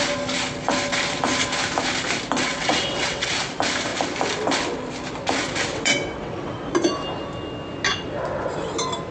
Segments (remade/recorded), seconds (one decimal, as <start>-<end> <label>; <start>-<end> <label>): 0.0-2.4 recorded; 2.4-3.3 remade; 3.3-5.7 recorded; 5.7-6.7 remade; 6.7-7.9 recorded; 7.9-8.5 remade; 8.5-9.1 recorded